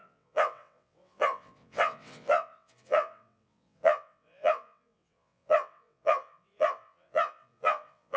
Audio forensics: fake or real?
fake